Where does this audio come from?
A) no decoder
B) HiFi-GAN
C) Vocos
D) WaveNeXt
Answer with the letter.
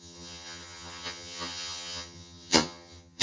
B